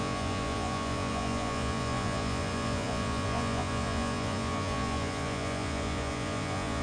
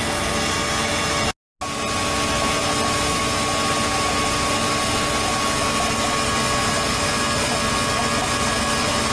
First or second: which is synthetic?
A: first